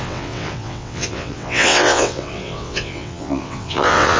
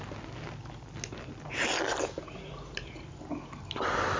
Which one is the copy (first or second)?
first